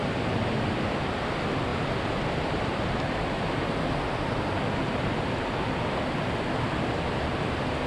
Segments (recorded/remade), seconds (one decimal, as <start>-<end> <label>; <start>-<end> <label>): 0.0-7.9 recorded